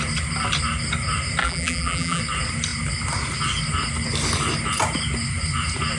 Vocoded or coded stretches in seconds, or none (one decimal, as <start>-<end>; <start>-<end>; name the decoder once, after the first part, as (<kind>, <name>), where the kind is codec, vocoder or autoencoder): 1.4-2.2 (vocoder, BigVGAN v2)